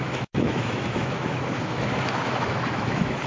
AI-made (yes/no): yes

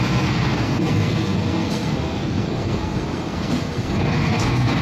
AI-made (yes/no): yes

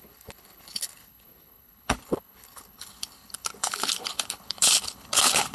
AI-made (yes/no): yes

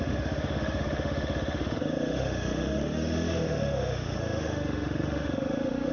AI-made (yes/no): yes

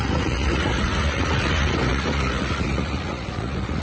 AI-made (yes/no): yes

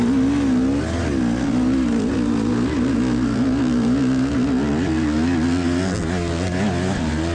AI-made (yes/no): no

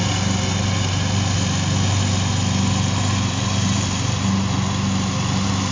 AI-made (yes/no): no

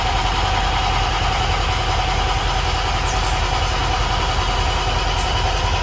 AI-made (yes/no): no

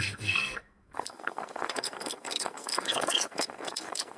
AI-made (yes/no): yes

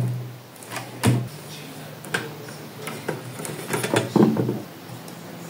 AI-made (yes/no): no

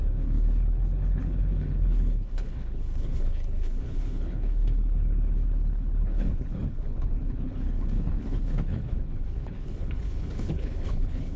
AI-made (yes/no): yes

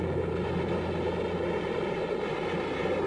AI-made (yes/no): no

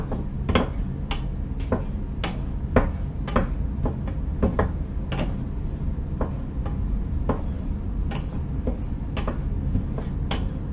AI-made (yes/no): no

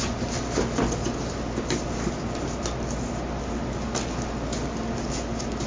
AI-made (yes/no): no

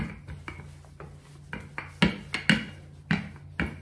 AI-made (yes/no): no